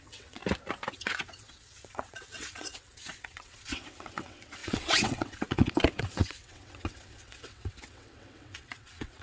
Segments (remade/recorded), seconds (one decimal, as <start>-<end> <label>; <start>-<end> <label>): 0.0-0.4 remade; 0.4-0.9 recorded; 0.9-9.2 remade